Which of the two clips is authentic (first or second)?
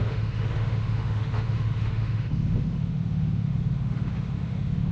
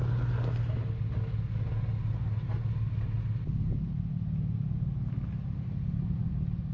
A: second